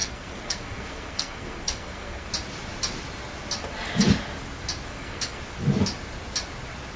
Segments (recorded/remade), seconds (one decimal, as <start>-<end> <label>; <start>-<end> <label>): 0.0-2.3 remade; 2.3-4.9 recorded; 4.9-5.4 remade; 5.4-7.0 recorded